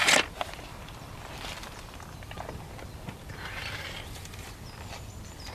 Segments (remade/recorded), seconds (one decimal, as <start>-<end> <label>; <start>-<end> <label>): 0.0-5.5 remade